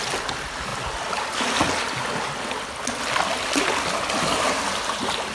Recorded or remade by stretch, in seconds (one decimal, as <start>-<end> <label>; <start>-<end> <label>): 0.0-5.3 recorded